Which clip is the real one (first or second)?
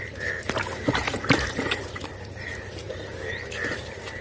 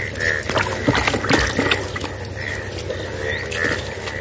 second